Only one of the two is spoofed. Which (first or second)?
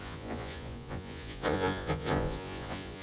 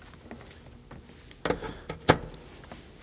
first